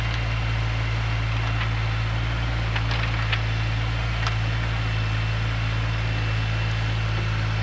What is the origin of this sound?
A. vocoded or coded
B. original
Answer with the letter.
B